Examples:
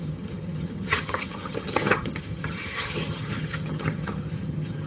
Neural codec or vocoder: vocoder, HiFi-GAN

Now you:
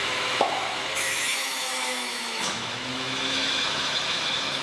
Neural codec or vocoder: autoencoder, DAC-VAE